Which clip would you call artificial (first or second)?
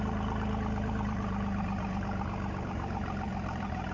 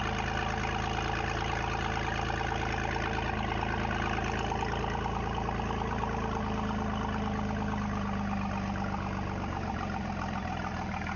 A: first